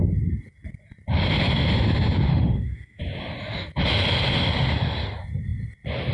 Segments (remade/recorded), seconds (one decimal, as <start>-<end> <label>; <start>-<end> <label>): 0.0-2.3 recorded; 2.3-3.0 remade; 3.0-6.1 recorded